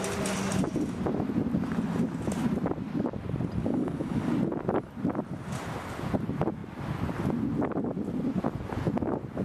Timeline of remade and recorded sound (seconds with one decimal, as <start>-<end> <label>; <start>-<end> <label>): 0.0-3.6 recorded; 3.6-4.3 remade; 4.3-9.4 recorded